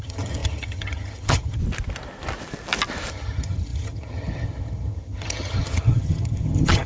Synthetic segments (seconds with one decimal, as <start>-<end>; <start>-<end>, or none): 0.0-1.6; 3.1-6.9